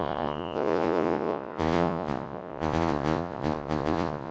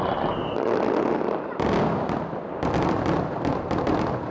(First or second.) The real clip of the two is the second